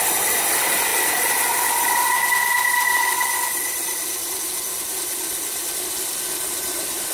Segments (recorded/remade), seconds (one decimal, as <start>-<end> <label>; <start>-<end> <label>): 0.0-7.1 recorded